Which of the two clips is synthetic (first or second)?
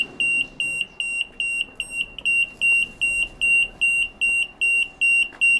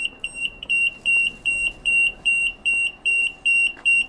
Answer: second